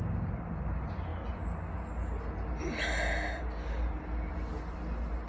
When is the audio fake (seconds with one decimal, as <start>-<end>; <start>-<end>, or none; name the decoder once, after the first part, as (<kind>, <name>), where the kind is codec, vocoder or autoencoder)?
none